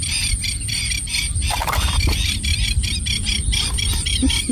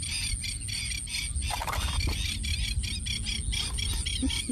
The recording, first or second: second